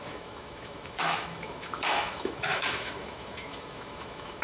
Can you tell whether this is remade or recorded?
remade